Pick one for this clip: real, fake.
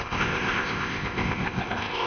fake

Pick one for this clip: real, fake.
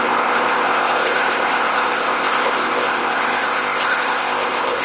fake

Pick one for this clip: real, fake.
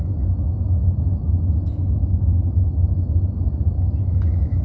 real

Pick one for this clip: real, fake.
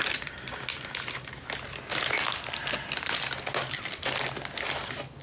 real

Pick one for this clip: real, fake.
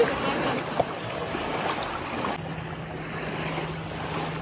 real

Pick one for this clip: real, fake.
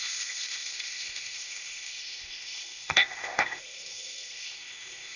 fake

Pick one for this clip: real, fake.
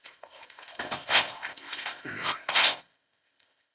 fake